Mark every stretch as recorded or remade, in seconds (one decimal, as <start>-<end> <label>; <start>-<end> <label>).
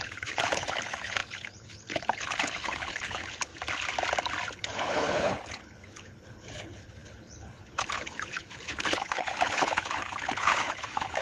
0.0-3.5 remade; 3.5-4.5 recorded; 4.5-11.2 remade